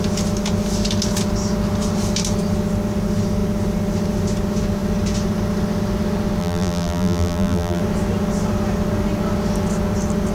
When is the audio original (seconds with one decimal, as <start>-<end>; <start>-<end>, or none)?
0.0-6.4; 7.8-10.3